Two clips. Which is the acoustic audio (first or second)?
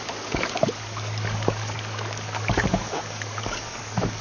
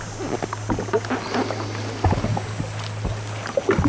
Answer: second